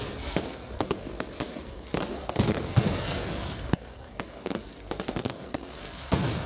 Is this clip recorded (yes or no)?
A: no